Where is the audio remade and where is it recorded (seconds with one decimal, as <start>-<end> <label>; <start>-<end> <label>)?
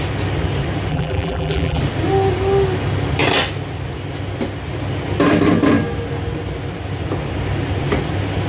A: 0.0-0.9 recorded; 0.9-1.8 remade; 1.8-8.5 recorded